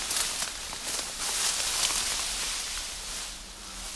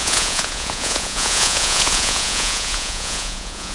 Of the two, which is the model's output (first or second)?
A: second